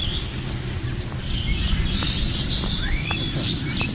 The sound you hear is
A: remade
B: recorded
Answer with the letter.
B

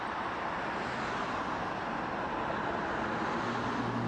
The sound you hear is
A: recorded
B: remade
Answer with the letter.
A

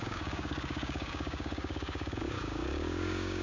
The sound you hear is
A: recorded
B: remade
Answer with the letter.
B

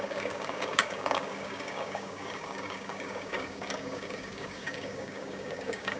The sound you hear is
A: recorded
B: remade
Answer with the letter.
B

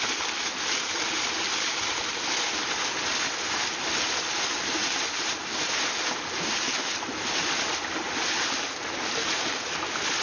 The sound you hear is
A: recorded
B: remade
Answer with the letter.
A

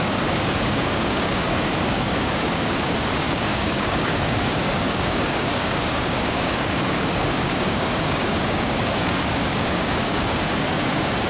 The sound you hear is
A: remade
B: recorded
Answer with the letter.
A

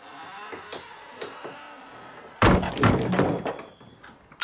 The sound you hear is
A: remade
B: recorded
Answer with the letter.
B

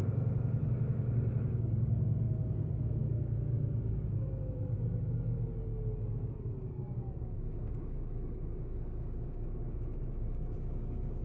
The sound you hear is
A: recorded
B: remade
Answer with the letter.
B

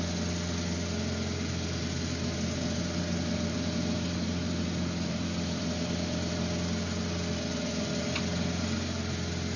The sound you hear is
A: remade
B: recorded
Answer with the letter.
B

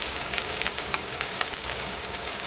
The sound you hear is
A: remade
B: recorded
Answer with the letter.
A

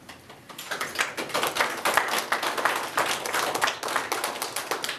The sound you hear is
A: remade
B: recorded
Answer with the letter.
B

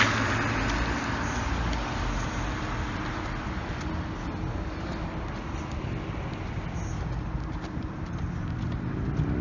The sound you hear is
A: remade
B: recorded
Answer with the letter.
B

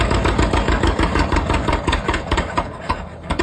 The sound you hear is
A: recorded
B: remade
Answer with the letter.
B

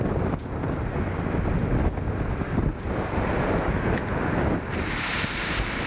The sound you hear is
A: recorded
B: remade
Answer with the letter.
A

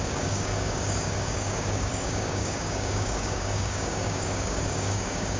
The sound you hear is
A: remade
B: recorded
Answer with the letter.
A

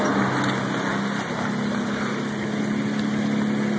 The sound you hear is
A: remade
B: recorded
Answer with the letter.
B